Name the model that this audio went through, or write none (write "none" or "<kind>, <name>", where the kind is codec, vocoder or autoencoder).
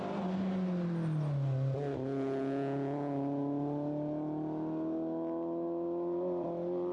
none